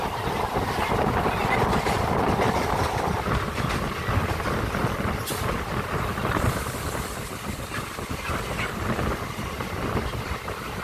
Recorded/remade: recorded